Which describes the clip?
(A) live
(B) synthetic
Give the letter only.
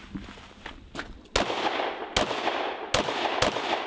A